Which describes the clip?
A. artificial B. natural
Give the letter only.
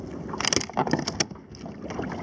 B